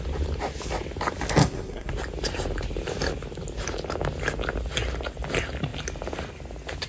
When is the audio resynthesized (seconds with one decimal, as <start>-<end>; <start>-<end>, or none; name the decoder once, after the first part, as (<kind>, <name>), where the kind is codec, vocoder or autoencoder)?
1.4-1.9 (codec, SNAC)